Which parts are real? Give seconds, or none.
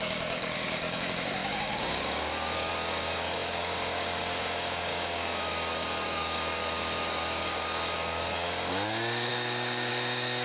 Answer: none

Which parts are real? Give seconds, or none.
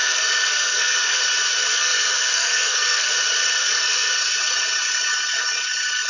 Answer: 1.2-1.7; 3.1-3.6; 4.1-6.1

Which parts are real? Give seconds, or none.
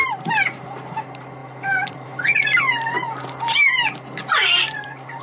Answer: 0.0-1.4; 2.6-4.4